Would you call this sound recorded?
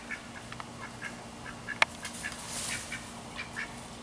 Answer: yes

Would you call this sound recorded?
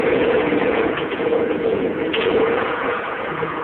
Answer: no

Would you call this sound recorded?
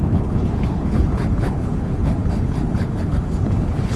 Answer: no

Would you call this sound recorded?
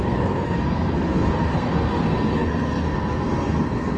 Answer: no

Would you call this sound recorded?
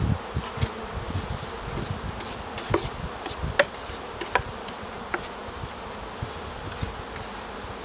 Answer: yes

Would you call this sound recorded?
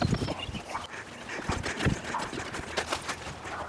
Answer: yes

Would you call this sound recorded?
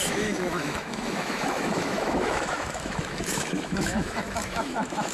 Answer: no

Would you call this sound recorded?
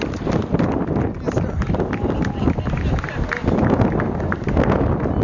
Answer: yes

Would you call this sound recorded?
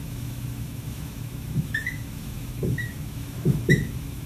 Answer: no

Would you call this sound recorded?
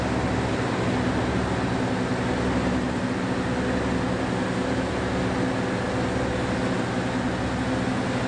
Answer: yes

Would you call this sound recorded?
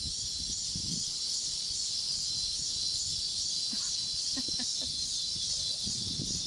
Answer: no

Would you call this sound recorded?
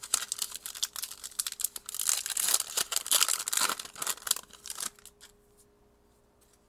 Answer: yes